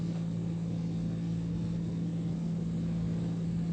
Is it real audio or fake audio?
fake